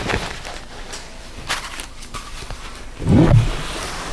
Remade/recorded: remade